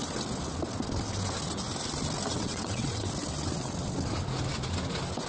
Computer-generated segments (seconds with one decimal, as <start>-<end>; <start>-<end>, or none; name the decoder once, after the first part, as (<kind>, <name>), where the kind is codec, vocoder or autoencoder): 2.3-3.0 (vocoder, WaveNeXt)